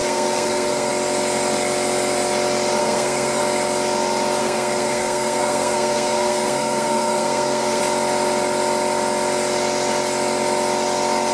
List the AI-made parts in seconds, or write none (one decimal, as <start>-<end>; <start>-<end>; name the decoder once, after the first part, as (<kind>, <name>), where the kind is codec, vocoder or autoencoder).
0.0-0.9 (codec, SNAC); 2.8-3.4; 4.4-7.8